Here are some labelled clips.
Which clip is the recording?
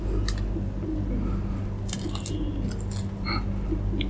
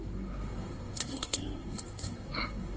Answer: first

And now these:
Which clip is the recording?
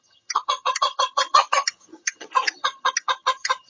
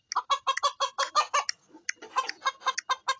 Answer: second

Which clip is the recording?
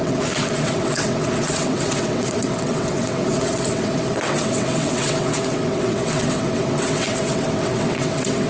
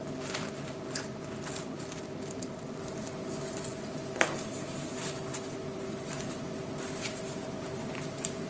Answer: second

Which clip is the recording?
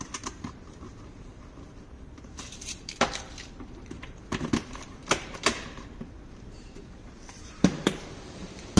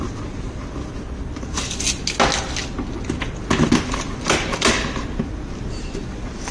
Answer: second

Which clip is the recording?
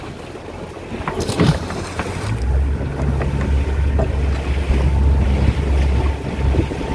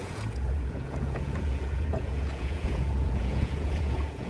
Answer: first